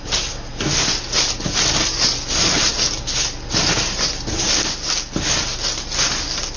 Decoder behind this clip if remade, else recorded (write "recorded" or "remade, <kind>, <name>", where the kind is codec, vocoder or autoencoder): recorded